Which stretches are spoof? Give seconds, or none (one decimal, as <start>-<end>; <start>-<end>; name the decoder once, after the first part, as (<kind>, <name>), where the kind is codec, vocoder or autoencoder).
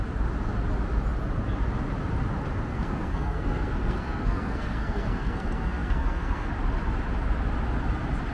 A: 2.7-6.5 (codec, SNAC)